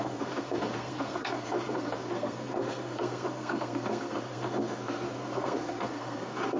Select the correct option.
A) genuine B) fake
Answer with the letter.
B